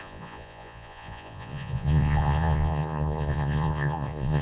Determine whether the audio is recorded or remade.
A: remade